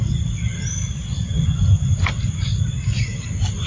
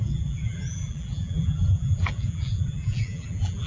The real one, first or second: first